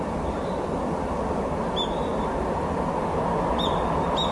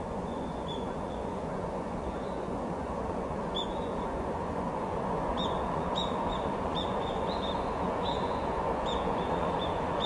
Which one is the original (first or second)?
first